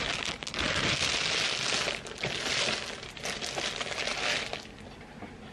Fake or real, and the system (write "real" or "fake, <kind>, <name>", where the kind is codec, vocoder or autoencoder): real